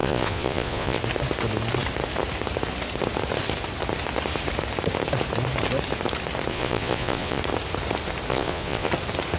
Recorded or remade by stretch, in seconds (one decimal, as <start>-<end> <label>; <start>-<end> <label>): 0.0-1.0 remade; 1.0-6.5 recorded; 6.5-7.4 remade; 7.4-8.3 recorded; 8.3-8.9 remade; 8.9-9.4 recorded